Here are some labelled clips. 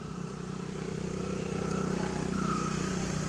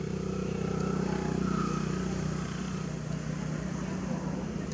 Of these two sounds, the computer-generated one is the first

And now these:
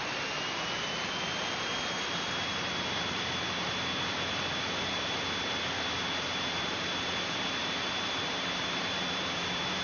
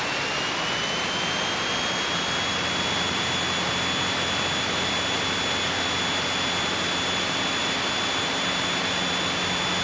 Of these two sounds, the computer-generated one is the first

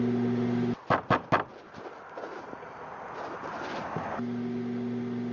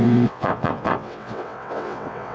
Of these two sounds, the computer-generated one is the second